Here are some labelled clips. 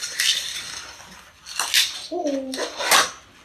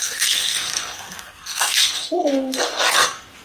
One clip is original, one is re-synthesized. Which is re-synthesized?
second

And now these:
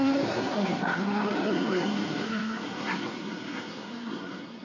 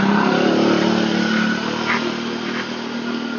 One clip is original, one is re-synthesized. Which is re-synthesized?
first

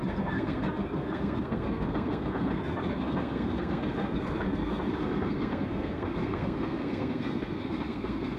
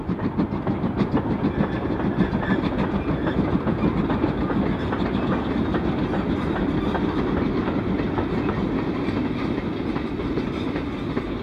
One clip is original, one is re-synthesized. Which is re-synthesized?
first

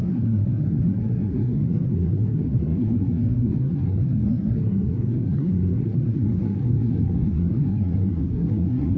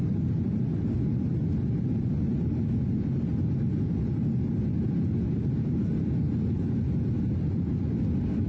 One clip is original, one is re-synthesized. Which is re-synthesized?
first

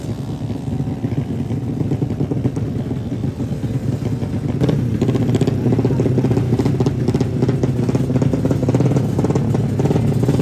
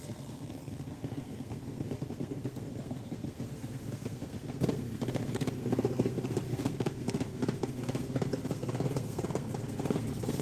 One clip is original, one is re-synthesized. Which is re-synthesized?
second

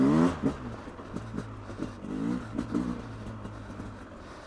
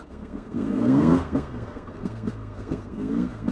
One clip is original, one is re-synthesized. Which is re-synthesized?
second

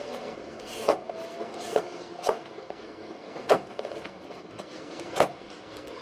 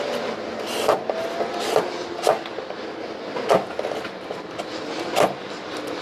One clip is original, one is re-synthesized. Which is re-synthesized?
first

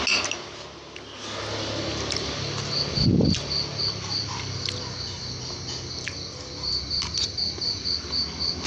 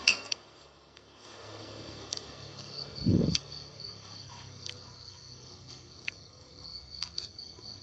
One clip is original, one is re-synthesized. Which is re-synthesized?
second